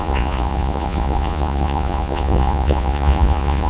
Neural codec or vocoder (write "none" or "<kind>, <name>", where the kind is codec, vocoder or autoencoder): vocoder, Vocos